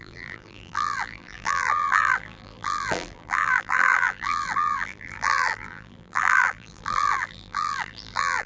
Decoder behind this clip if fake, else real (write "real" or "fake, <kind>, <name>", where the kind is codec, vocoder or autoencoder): fake, vocoder, BigVGAN v2